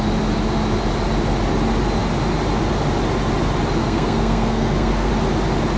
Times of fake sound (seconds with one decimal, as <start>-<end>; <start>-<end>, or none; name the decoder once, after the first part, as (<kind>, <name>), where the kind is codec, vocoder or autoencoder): 3.8-5.1 (codec, SNAC)